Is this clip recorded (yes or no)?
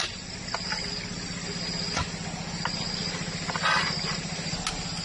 yes